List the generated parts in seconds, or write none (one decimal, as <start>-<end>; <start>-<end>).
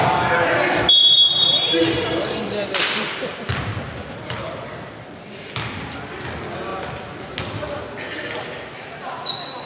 1.0-4.7; 6.7-7.2